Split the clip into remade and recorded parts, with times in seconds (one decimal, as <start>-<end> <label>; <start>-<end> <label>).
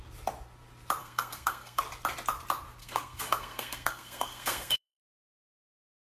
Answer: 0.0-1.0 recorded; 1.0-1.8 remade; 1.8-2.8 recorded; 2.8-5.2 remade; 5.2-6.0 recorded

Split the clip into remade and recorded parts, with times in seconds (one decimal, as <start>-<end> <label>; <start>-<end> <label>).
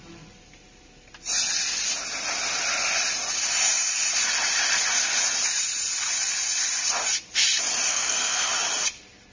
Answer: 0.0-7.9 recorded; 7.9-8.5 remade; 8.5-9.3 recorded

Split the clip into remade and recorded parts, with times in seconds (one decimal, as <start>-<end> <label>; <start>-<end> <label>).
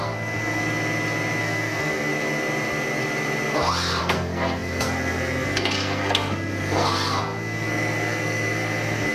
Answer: 0.0-0.6 remade; 0.6-1.4 recorded; 1.4-2.1 remade; 2.1-4.0 recorded; 4.0-9.1 remade